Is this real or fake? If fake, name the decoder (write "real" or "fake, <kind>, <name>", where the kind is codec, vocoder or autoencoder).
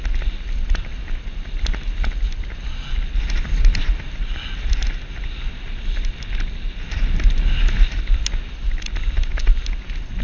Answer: real